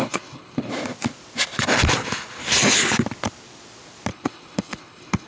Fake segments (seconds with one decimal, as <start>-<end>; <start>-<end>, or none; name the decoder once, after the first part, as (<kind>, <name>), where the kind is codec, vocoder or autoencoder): 0.0-0.7 (codec, HILCodec); 4.1-5.3